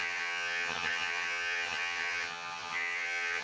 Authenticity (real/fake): fake